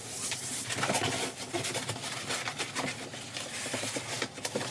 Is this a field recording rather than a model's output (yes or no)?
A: yes